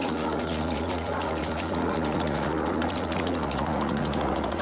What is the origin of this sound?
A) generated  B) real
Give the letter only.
A